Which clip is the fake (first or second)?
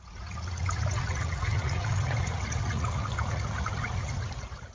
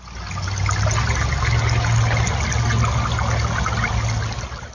first